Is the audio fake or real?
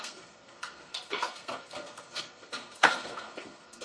fake